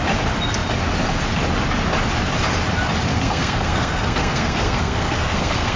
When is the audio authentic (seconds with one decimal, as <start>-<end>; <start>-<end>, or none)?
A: 0.0-3.1